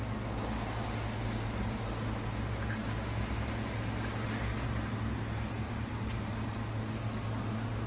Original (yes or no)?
yes